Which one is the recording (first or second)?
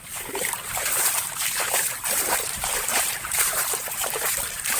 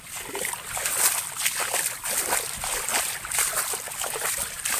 second